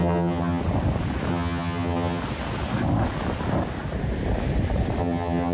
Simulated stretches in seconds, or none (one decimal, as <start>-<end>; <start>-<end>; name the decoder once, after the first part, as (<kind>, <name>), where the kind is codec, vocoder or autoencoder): 0.0-0.6 (vocoder, HiFi-GAN); 1.3-2.2; 5.0-5.5